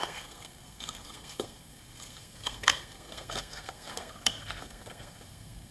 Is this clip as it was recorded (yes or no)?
no